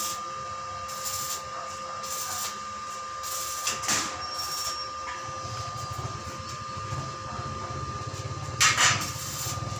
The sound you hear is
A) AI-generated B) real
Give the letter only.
B